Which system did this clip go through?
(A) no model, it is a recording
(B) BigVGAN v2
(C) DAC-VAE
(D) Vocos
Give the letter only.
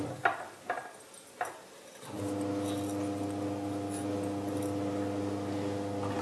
A